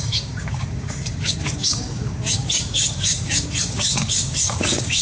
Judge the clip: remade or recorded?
remade